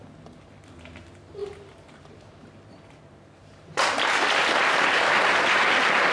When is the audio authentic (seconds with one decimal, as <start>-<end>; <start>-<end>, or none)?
0.0-1.4; 5.1-6.1